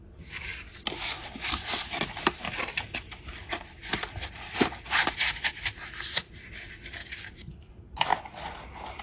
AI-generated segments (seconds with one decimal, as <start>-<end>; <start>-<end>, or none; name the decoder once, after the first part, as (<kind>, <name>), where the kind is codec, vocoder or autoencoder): 7.0-7.7 (codec, DAC)